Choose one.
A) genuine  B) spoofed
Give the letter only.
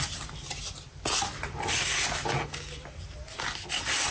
A